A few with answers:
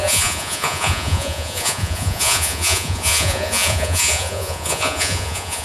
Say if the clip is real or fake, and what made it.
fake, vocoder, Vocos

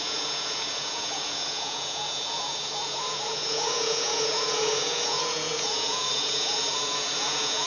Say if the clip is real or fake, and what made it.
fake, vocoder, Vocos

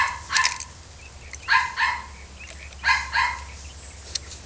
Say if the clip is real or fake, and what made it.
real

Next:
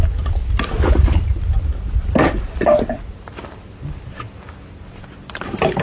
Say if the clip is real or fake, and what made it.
real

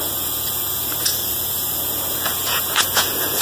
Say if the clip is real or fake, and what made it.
fake, vocoder, Vocos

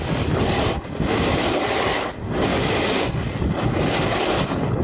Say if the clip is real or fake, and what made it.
real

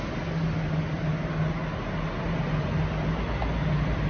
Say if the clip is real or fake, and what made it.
real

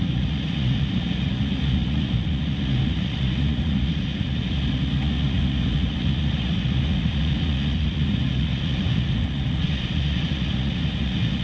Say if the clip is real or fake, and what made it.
fake, vocoder, Vocos